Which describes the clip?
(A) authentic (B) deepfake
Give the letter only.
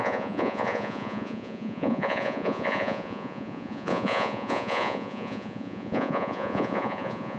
B